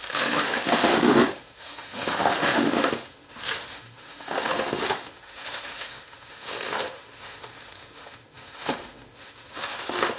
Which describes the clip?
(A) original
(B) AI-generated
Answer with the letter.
B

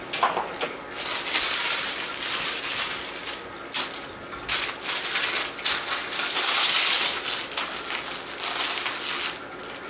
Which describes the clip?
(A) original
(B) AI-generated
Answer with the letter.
A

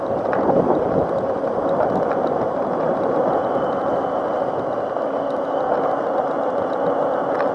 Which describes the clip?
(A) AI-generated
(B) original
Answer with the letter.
B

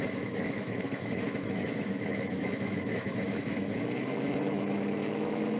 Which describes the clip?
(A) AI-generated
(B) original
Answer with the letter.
A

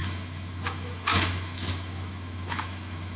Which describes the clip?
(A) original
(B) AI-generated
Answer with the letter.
B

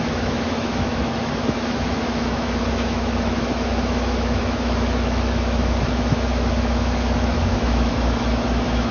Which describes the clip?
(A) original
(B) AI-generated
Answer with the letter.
B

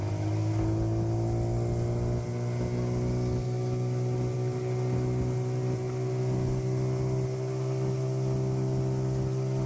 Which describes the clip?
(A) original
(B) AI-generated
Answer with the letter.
A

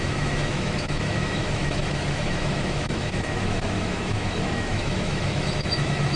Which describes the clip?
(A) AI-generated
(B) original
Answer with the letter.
A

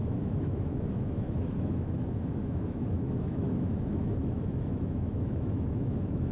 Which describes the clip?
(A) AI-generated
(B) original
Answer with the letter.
A